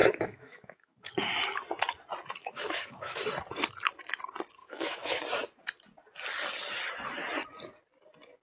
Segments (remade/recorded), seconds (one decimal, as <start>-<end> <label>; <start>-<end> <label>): 0.0-1.1 remade; 1.1-2.4 recorded; 2.4-3.2 remade; 3.2-4.6 recorded; 4.6-5.2 remade; 5.2-8.4 recorded